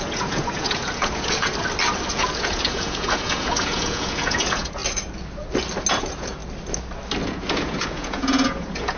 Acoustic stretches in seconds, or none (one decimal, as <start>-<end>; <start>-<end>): 1.5-2.1; 4.8-5.9; 6.4-7.2